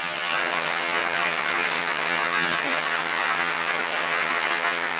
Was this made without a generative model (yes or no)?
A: no